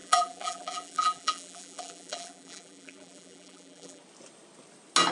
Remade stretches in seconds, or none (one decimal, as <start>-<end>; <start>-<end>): 0.0-4.0